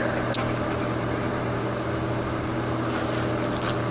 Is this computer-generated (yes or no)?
no